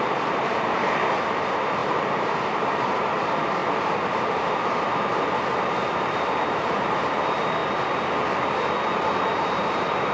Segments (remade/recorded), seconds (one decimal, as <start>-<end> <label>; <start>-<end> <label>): 0.0-7.6 remade; 7.6-9.2 recorded; 9.2-10.1 remade